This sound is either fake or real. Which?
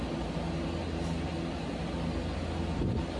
real